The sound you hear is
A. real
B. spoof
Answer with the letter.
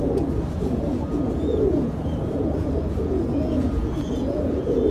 B